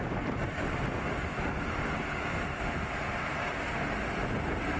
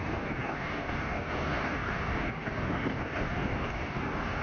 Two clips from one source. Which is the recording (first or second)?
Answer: first